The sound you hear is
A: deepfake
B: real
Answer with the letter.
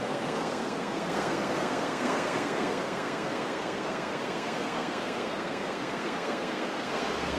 A